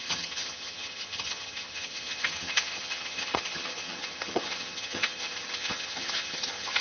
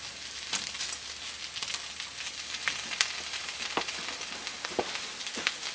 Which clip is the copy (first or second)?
first